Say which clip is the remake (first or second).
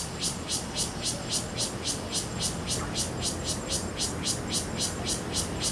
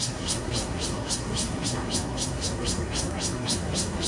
second